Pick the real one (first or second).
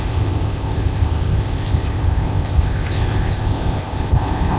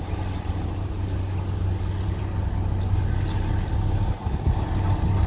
second